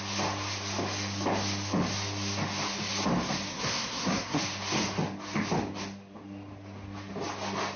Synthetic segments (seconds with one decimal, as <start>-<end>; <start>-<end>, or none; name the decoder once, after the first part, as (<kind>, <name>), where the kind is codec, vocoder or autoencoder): 3.5-4.4 (codec, SNAC)